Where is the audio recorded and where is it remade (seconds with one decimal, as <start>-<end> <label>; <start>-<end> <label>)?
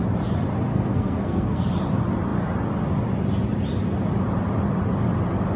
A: 0.0-0.7 recorded; 0.7-1.7 remade; 1.7-5.6 recorded